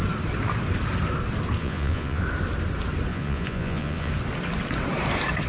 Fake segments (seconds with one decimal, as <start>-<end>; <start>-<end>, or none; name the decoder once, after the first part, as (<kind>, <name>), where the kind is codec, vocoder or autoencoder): 1.6-2.2 (vocoder, Vocos); 3.1-4.1

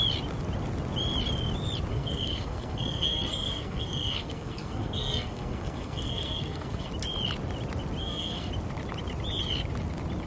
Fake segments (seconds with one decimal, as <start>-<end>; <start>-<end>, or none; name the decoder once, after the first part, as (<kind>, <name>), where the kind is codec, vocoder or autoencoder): 1.9-6.9 (codec, SNAC); 8.0-8.5